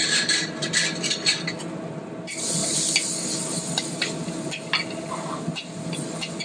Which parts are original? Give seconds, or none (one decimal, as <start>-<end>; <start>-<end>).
0.0-6.4